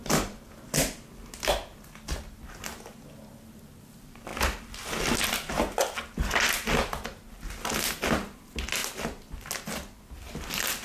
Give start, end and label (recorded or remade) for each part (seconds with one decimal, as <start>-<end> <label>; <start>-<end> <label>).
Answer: 0.0-10.8 recorded